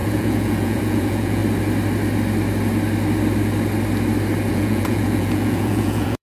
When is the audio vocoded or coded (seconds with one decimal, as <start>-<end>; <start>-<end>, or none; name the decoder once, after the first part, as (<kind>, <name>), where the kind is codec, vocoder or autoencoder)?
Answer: 0.0-1.4 (vocoder, Vocos); 4.5-6.2